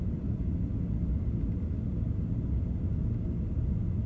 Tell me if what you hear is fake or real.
real